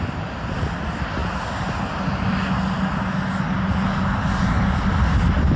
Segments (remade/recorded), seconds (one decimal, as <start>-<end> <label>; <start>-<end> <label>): 0.0-5.6 recorded